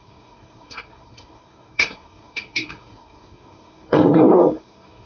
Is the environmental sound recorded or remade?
remade